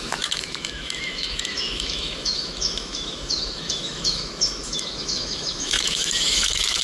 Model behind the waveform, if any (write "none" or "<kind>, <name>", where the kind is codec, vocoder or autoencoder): autoencoder, DAC-VAE